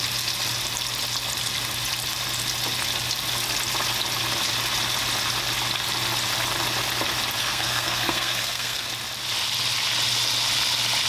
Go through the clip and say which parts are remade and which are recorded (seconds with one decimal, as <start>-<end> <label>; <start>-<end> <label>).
0.0-7.4 recorded; 7.4-8.9 remade; 8.9-11.1 recorded